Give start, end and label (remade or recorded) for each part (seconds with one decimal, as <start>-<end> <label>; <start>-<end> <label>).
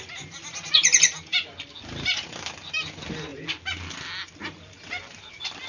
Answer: 0.0-5.7 recorded